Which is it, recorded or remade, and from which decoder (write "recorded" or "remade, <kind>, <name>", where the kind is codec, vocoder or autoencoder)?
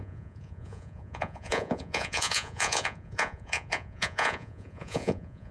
remade, vocoder, Vocos